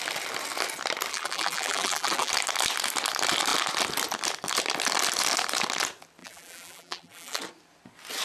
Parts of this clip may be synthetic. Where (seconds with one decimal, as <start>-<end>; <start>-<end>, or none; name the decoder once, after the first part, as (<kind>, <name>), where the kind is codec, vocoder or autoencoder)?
1.1-2.3 (vocoder, BigVGAN v2); 6.2-7.4

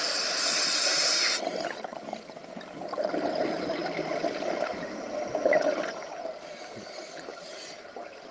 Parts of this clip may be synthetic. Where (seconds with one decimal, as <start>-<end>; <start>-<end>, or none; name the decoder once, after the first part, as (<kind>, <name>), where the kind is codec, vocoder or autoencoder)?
7.3-7.9 (vocoder, BigVGAN v2)